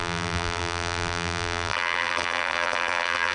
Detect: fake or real fake